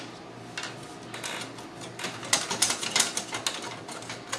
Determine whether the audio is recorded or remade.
recorded